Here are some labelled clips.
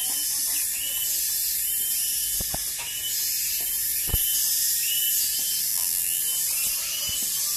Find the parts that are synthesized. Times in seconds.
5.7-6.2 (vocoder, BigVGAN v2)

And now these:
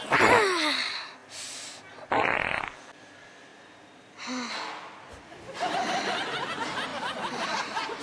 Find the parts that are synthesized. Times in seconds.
1.2-1.7 (vocoder, BigVGAN v2); 6.9-8.0

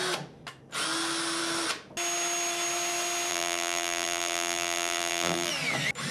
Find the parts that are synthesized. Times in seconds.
3.3-5.5 (vocoder, BigVGAN v2)

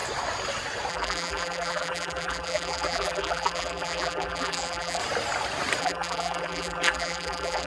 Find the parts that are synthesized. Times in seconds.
0.9-5.0 (vocoder, BigVGAN v2); 5.8-7.7